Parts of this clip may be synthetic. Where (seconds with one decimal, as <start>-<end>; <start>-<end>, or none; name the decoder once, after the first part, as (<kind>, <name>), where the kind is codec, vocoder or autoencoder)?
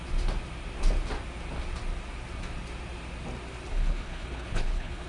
3.7-5.1 (codec, HILCodec)